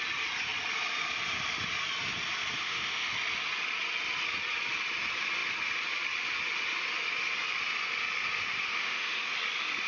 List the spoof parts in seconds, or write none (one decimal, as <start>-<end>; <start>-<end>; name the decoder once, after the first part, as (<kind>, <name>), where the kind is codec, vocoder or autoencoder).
2.6-3.1 (autoencoder, DAC-VAE); 8.7-9.3